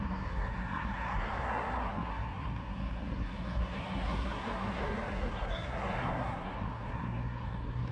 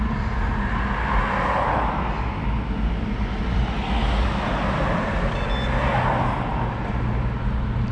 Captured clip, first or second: second